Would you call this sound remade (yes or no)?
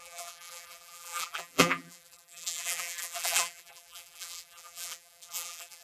yes